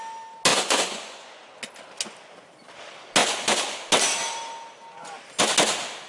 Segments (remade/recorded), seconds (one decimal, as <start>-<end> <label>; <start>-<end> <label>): 0.0-0.5 recorded; 0.5-1.6 remade; 1.6-3.2 recorded; 3.2-3.8 remade; 3.8-6.1 recorded